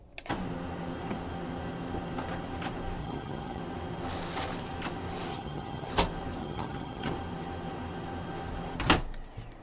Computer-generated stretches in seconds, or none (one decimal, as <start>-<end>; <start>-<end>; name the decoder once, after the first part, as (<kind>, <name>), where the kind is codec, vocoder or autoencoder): 3.0-3.6 (vocoder, HiFi-GAN); 5.3-5.9; 6.4-7.1